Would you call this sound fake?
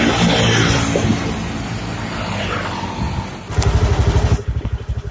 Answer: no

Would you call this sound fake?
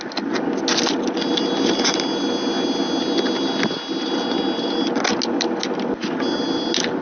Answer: no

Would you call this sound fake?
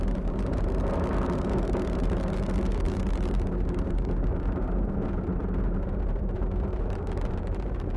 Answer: yes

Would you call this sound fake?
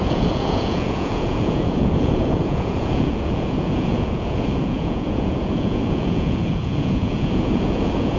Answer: yes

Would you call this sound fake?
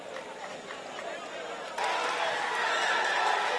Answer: no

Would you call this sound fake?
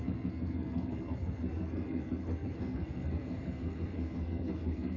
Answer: yes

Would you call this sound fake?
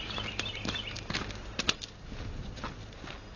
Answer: no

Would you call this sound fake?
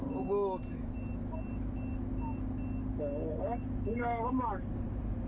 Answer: no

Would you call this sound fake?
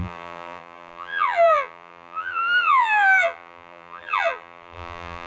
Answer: yes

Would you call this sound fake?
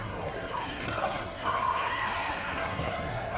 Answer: yes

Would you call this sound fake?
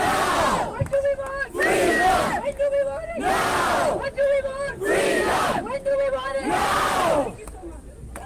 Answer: no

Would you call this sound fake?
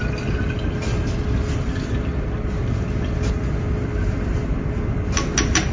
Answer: no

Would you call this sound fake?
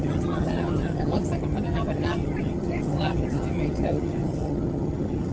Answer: yes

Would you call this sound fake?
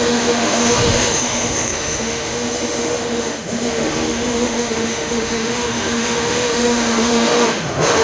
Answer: yes